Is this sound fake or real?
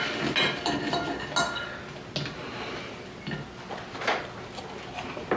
real